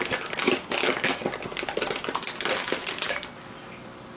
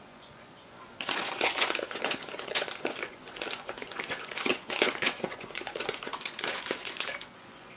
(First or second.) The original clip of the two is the first